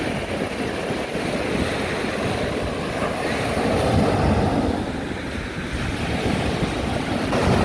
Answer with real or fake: real